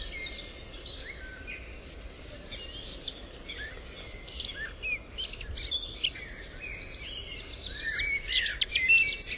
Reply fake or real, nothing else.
real